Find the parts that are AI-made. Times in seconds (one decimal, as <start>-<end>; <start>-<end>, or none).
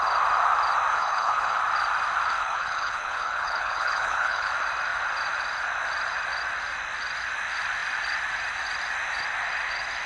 0.9-1.6; 2.4-4.5